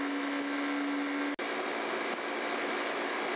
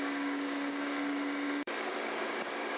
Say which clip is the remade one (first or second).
second